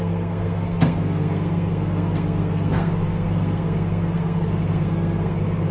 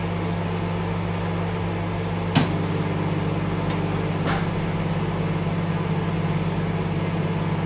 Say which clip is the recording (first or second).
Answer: second